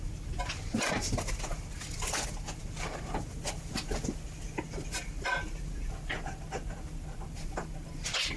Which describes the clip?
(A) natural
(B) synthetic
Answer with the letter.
A